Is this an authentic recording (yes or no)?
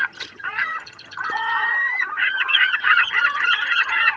no